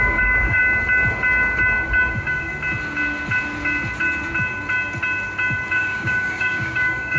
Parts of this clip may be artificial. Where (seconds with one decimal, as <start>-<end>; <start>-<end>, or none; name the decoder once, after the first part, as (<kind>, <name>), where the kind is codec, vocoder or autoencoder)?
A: 0.0-0.6 (codec, DAC); 2.1-2.5; 5.7-7.2